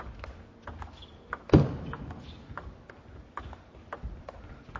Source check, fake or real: real